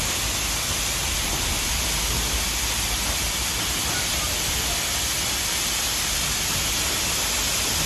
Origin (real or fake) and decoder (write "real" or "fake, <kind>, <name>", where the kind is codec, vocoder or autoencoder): real